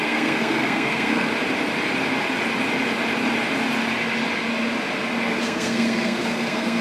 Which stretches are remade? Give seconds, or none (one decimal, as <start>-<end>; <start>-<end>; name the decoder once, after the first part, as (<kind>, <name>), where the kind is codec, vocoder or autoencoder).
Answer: 0.0-1.3 (codec, SNAC); 5.4-6.8